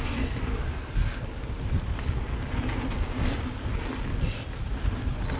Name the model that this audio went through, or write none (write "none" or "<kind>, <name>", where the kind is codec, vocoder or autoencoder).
none